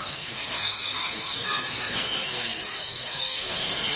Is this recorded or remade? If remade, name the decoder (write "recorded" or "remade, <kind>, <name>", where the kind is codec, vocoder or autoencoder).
remade, codec, SNAC